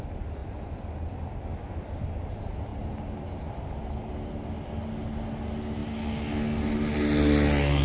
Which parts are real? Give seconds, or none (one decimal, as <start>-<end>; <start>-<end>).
0.0-7.8